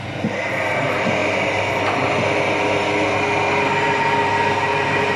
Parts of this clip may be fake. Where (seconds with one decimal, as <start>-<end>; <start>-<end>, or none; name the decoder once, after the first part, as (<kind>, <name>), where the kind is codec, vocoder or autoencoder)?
none